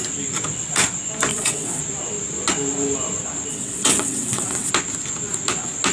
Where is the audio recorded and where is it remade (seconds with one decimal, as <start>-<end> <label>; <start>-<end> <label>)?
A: 0.0-1.3 recorded; 1.3-1.8 remade; 1.8-3.5 recorded; 3.5-4.7 remade; 4.7-5.9 recorded

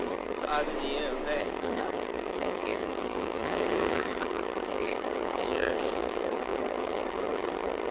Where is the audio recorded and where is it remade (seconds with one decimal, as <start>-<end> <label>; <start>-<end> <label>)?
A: 0.0-0.5 remade; 0.5-1.4 recorded; 1.4-7.9 remade

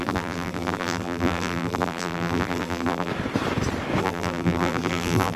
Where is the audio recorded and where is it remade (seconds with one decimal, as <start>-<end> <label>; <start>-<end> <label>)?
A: 0.0-3.1 remade; 3.1-4.0 recorded; 4.0-5.4 remade

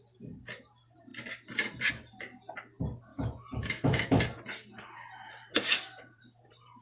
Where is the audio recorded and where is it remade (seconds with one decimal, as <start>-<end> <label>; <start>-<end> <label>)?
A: 0.0-3.1 recorded; 3.1-4.2 remade; 4.2-6.8 recorded

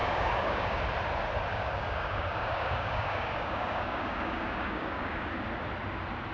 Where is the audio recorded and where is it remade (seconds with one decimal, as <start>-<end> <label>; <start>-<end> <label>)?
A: 0.0-0.8 remade; 0.8-1.5 recorded; 1.5-5.3 remade; 5.3-6.3 recorded

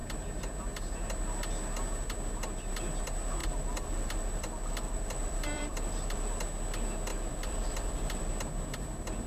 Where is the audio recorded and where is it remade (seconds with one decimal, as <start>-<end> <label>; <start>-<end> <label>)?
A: 0.0-3.4 recorded; 3.4-6.3 remade; 6.3-7.1 recorded; 7.1-8.3 remade; 8.3-9.3 recorded

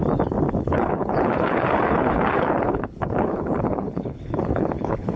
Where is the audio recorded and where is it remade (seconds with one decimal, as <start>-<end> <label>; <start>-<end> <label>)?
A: 0.0-0.6 recorded; 0.6-5.2 remade